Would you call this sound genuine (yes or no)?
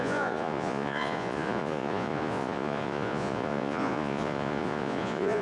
no